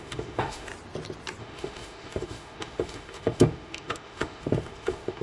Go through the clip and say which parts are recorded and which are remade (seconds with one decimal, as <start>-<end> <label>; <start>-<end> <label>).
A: 0.0-0.7 remade; 0.7-1.4 recorded; 1.4-5.2 remade